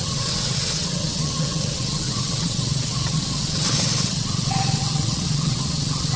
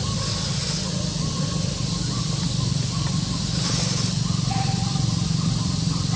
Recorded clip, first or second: second